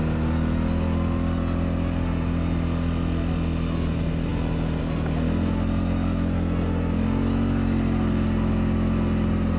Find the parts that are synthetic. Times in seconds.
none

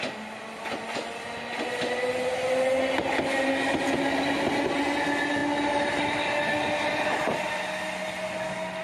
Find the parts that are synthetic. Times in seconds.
none